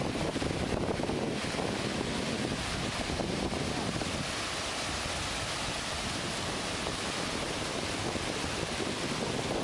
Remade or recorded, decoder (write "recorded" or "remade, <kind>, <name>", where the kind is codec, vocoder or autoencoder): recorded